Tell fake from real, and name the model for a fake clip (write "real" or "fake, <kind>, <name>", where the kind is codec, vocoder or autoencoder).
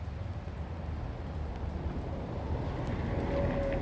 real